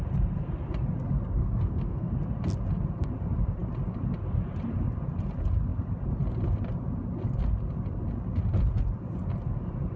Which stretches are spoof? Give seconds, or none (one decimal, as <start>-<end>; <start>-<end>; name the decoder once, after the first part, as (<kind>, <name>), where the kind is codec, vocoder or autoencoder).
1.4-2.1 (codec, SNAC)

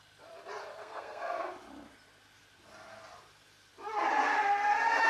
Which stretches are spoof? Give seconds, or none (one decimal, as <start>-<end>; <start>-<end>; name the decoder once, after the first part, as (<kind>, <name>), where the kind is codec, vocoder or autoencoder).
0.8-1.5 (codec, SNAC)

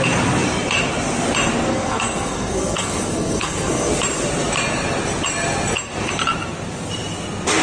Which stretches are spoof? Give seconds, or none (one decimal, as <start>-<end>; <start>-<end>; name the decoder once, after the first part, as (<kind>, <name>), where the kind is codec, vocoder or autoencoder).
1.7-3.9 (codec, SNAC)

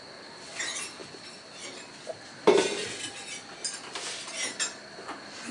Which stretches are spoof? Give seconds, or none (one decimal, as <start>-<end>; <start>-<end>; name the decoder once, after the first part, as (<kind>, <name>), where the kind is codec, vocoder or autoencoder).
none

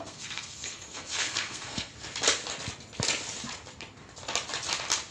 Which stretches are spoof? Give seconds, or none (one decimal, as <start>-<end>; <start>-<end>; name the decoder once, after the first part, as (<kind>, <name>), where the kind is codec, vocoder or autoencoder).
0.0-1.9 (codec, SNAC)

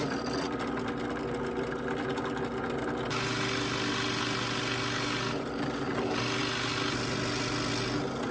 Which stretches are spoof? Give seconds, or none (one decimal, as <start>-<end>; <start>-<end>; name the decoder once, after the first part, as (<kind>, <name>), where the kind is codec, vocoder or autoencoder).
none